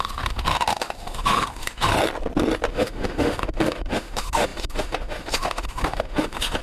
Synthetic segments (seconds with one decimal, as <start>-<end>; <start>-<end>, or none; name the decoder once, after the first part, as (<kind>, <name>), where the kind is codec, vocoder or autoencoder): 0.0-1.9 (autoencoder, DAC-VAE); 2.7-6.6